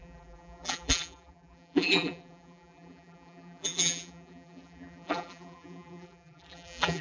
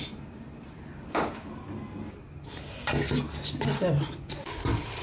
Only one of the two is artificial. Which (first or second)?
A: first